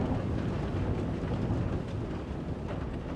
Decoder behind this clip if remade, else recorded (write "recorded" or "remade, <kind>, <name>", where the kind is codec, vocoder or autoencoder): recorded